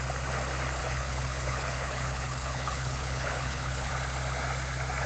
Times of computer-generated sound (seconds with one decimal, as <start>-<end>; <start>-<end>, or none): 0.8-3.9